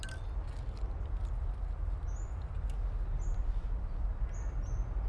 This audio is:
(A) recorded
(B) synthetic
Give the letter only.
A